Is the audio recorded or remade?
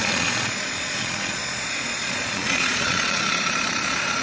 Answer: remade